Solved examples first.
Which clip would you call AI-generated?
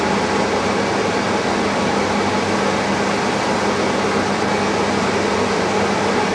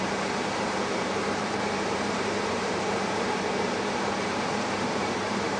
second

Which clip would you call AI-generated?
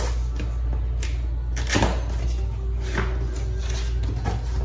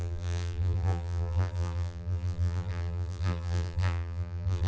second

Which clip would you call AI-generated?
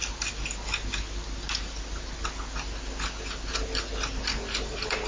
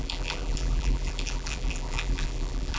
second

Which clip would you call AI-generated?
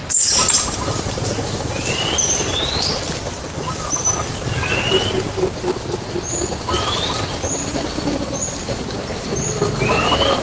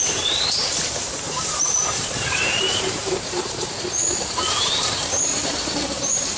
second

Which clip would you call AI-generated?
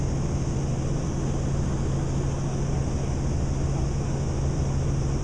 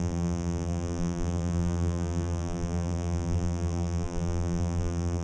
second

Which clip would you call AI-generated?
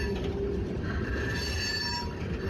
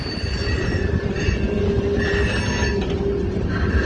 first